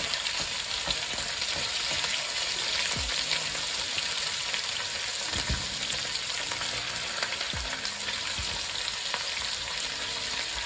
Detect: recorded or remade recorded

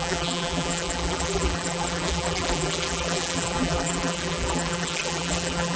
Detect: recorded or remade remade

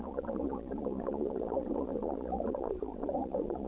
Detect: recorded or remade remade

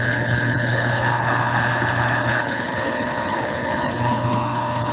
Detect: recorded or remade remade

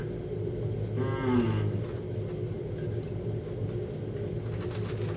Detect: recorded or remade recorded